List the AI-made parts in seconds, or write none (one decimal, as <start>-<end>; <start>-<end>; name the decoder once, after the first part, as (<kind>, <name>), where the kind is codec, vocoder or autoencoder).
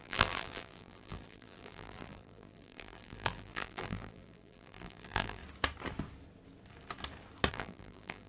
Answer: 0.0-5.4 (vocoder, BigVGAN v2); 7.5-8.3